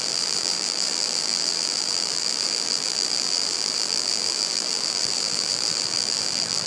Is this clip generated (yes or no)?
yes